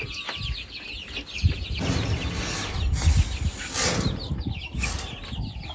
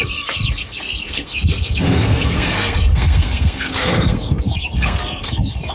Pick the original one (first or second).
first